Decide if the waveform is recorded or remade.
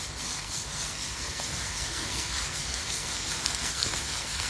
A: remade